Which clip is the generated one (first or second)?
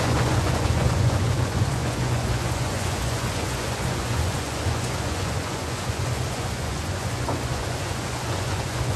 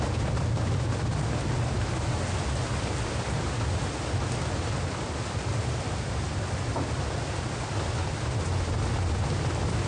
first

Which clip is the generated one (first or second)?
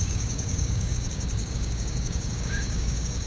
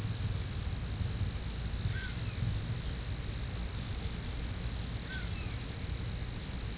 first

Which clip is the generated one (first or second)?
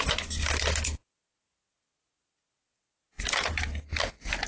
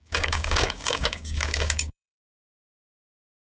second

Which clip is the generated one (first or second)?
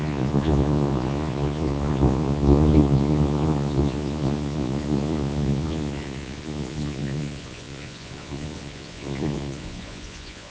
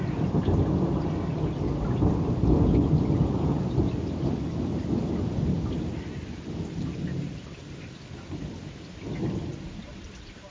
first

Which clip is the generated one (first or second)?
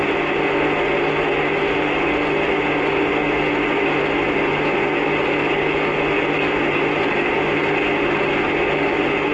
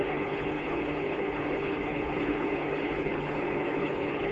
second